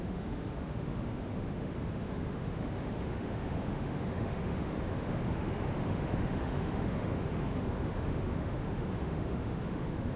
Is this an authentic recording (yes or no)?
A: no